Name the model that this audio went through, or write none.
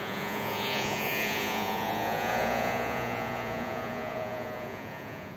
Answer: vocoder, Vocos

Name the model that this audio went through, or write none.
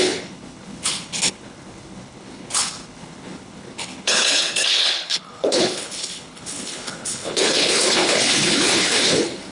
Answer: codec, HILCodec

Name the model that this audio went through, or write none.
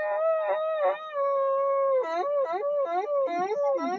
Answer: none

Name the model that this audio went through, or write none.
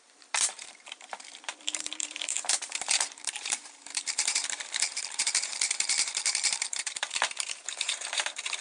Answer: vocoder, BigVGAN v2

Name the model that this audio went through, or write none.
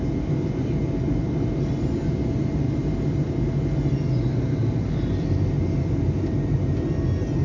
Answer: none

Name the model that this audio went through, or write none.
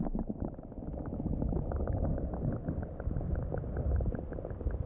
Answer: none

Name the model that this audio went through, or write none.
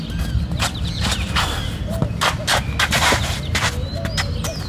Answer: none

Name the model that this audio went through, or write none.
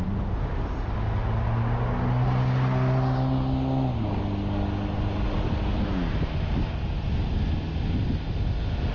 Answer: none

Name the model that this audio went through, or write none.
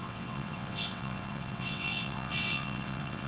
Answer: vocoder, WaveNeXt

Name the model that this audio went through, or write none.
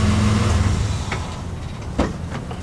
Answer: none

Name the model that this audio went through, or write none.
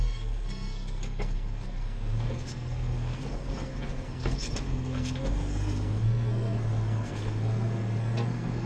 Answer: codec, SNAC